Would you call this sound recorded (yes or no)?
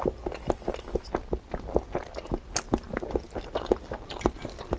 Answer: yes